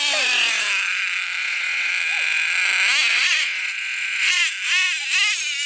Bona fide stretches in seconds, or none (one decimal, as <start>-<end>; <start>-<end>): 0.0-1.4; 1.9-3.1; 4.4-5.7